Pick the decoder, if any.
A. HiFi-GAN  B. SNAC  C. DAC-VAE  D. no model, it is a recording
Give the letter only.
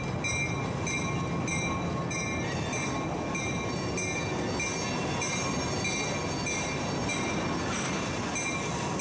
D